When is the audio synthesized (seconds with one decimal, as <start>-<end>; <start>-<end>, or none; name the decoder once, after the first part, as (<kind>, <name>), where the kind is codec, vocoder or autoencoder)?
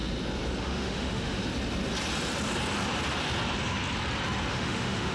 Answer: 0.6-1.4 (autoencoder, DAC-VAE); 4.5-5.1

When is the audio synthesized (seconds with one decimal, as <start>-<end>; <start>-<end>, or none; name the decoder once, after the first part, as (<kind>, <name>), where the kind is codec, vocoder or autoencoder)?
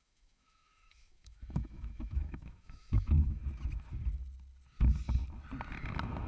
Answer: 0.0-3.4 (autoencoder, DAC-VAE)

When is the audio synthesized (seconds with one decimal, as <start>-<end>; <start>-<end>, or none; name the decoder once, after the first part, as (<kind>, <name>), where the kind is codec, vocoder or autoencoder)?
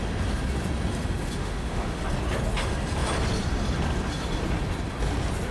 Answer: 1.4-2.0 (autoencoder, DAC-VAE)